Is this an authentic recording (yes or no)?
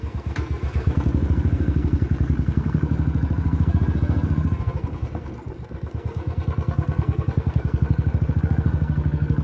no